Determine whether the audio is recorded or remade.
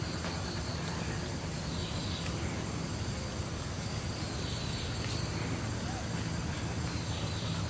recorded